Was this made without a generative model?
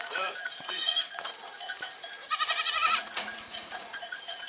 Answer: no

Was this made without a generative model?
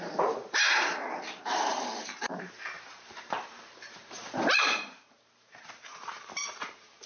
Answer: no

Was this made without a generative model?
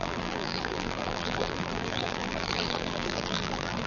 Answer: no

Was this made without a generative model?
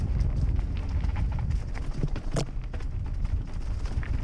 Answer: yes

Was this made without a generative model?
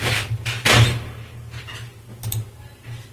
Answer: yes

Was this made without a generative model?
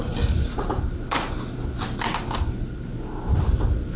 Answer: yes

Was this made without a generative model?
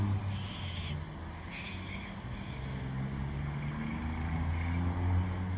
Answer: yes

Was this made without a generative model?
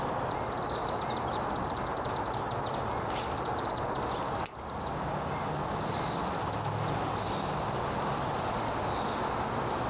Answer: yes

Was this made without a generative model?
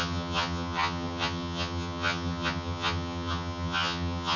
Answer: no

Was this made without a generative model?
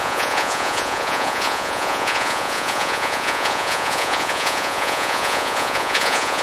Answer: no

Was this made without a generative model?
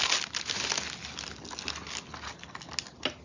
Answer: yes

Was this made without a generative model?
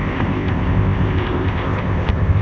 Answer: no